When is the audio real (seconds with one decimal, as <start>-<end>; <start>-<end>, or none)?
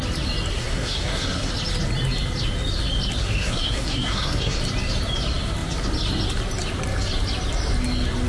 0.0-0.5; 1.5-3.2; 4.6-8.3